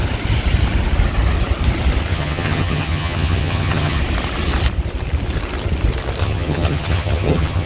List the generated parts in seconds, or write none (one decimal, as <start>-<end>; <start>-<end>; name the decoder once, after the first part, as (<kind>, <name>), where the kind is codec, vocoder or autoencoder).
2.1-4.0 (vocoder, HiFi-GAN); 6.2-7.7